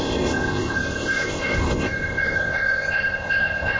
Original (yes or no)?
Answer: no